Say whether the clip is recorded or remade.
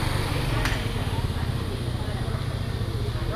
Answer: recorded